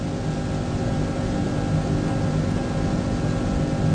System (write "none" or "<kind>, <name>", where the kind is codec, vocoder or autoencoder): none